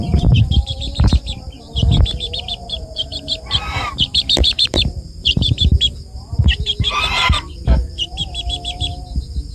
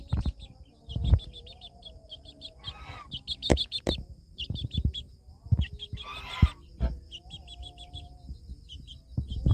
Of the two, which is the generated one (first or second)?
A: first